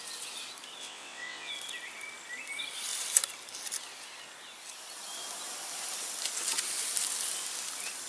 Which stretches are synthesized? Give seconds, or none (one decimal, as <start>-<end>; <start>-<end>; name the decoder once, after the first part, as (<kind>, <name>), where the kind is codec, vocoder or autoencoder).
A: 0.8-1.5 (vocoder, WaveNeXt)